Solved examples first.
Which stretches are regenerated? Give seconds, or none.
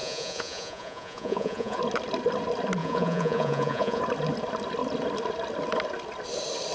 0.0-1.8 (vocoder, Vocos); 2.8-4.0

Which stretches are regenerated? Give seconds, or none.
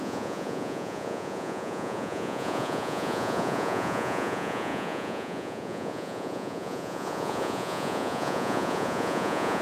0.0-9.6 (vocoder, Vocos)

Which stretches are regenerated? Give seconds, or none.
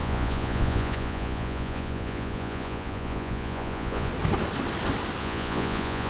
0.0-4.1 (vocoder, Vocos); 5.2-6.1